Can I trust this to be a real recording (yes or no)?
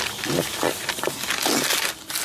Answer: yes